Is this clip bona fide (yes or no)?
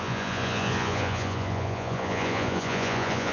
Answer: no